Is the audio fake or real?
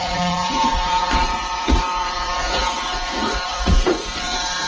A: fake